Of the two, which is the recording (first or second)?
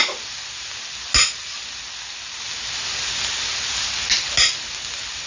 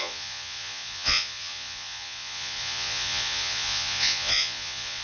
first